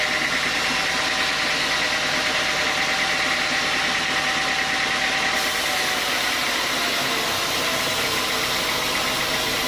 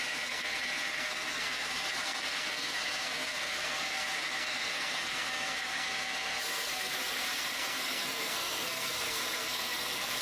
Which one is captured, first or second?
first